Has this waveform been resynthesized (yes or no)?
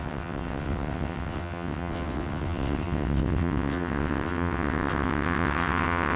yes